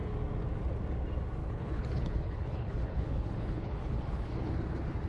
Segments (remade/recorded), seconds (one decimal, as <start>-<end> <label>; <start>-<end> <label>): 0.0-1.4 recorded; 1.4-4.5 remade; 4.5-5.1 recorded